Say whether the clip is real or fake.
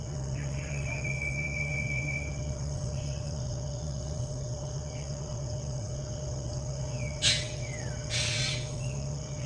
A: fake